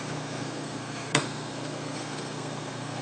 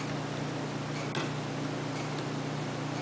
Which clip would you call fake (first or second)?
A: first